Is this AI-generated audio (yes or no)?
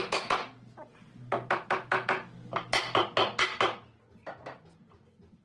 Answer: no